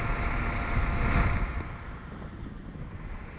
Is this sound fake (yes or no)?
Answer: no